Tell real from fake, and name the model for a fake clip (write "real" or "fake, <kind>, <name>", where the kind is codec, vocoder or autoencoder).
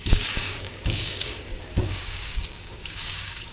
fake, codec, DAC